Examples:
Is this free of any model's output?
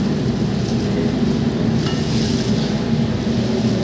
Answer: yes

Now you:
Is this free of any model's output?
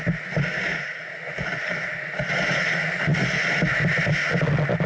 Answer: yes